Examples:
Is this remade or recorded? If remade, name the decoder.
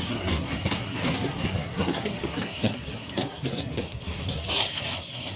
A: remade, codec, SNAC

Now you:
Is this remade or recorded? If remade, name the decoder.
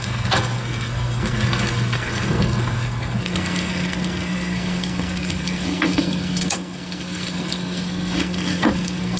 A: remade, codec, SNAC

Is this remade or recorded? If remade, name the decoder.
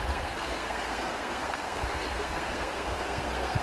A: remade, codec, SNAC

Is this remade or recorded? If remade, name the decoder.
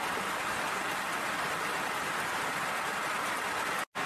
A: recorded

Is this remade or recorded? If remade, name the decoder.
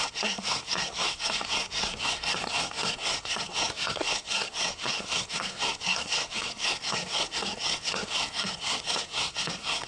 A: remade, codec, SNAC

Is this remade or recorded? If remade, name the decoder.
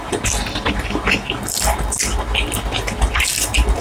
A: recorded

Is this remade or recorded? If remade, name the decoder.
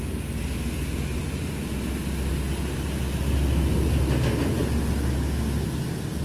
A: recorded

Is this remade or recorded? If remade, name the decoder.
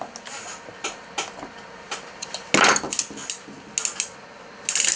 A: recorded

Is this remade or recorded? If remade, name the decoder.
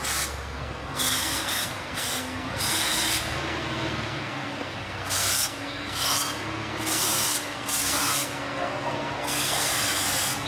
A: remade, codec, SNAC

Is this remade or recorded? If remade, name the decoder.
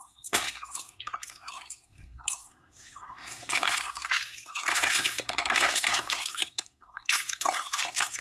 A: remade, codec, SNAC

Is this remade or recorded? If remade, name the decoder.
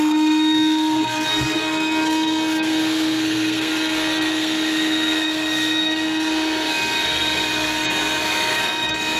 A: remade, codec, SNAC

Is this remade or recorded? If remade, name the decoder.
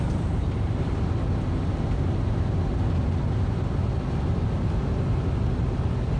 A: recorded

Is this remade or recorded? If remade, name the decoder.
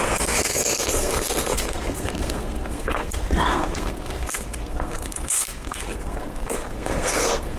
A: remade, codec, SNAC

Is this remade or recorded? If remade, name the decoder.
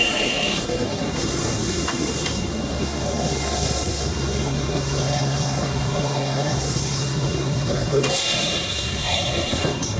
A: remade, codec, SNAC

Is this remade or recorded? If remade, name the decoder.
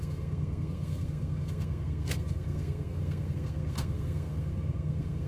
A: remade, codec, SNAC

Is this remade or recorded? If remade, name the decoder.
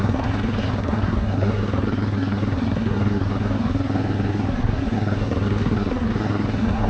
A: remade, codec, SNAC